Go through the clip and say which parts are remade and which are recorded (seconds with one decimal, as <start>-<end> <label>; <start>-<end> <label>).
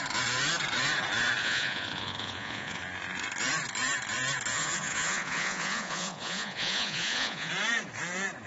0.0-1.4 recorded; 1.4-2.8 remade; 2.8-4.5 recorded; 4.5-7.5 remade; 7.5-8.5 recorded